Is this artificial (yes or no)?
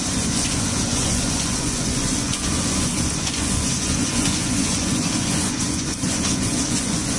yes